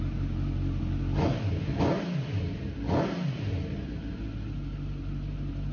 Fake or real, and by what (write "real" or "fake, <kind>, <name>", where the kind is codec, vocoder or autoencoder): real